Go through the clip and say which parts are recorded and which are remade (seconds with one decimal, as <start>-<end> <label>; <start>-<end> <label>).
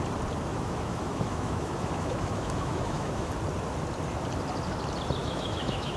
0.0-0.5 recorded; 0.5-3.3 remade; 3.3-5.2 recorded; 5.2-6.0 remade